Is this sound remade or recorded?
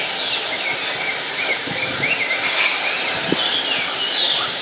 recorded